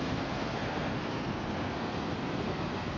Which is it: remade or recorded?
remade